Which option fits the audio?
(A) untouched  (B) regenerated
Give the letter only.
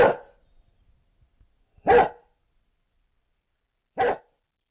A